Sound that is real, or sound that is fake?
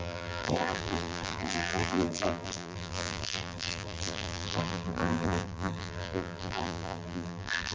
fake